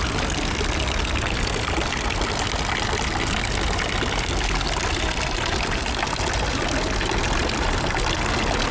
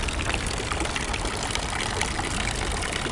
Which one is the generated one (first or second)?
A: second